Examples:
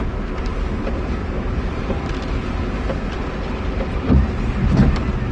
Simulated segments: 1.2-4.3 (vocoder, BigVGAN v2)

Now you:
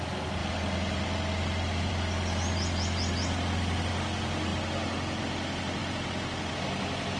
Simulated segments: none

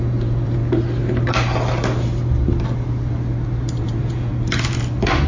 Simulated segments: 0.0-0.6 (vocoder, Vocos); 3.8-4.3

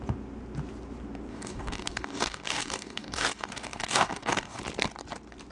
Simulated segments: 1.3-4.6 (codec, DAC)